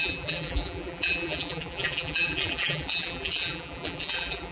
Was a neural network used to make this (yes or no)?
yes